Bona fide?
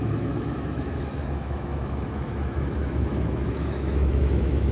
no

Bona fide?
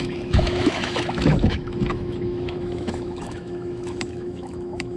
no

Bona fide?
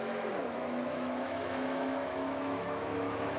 no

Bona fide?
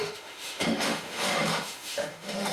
no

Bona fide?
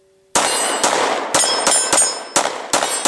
yes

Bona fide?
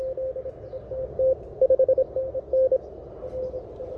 yes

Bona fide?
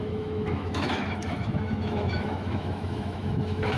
no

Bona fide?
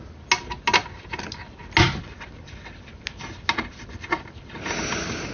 yes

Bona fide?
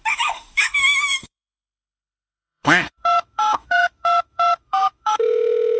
no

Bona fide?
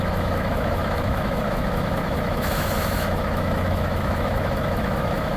no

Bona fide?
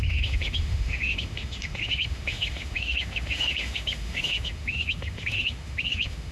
no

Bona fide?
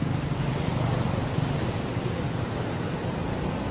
yes